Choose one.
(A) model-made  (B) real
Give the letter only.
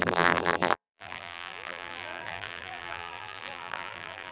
A